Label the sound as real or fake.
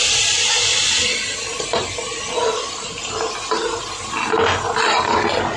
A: real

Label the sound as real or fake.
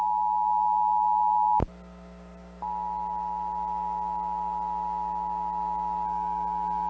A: real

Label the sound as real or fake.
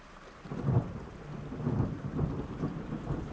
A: real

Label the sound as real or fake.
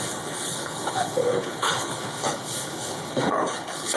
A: fake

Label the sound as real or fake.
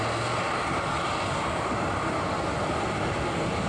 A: real